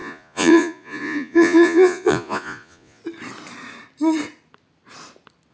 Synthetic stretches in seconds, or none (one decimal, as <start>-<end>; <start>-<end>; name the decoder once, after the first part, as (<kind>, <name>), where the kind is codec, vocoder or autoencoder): 0.0-3.0 (vocoder, Vocos)